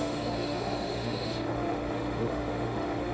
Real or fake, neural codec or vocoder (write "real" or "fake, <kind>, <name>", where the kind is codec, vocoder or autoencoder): fake, autoencoder, DAC-VAE